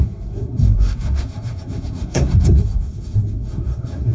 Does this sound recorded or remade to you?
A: remade